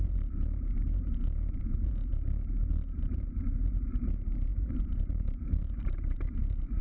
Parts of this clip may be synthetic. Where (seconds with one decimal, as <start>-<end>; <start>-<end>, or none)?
0.0-6.8